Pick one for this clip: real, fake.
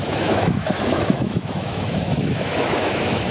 fake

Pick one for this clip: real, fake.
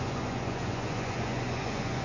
fake